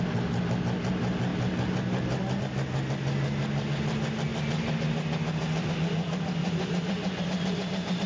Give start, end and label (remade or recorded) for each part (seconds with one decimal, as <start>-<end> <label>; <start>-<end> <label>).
0.0-6.4 recorded; 6.4-7.2 remade; 7.2-8.1 recorded